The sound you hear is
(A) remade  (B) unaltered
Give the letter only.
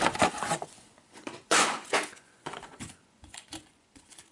A